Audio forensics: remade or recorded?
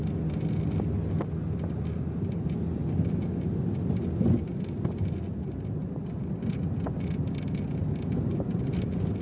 recorded